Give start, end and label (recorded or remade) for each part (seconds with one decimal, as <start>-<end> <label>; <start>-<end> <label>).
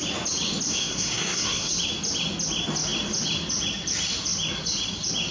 0.0-0.7 recorded; 0.7-1.7 remade; 1.7-5.3 recorded